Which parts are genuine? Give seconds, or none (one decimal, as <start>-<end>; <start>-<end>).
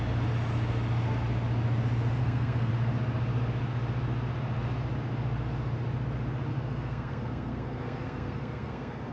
0.0-2.2; 2.7-6.5